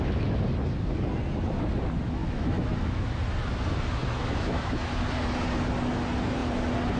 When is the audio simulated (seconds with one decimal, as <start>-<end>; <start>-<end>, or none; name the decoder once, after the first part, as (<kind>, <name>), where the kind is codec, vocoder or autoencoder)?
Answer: 2.2-3.1 (autoencoder, DAC-VAE); 4.0-4.9